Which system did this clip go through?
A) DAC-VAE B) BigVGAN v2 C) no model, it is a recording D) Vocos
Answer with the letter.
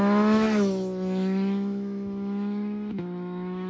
A